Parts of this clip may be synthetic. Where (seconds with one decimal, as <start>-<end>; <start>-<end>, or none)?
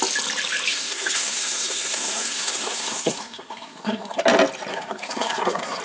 0.7-4.2; 4.7-5.8